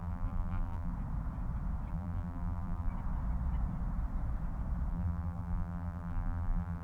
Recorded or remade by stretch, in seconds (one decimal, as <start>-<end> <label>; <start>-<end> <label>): 0.0-0.9 remade; 0.9-1.9 recorded; 1.9-2.9 remade; 2.9-4.9 recorded; 4.9-6.8 remade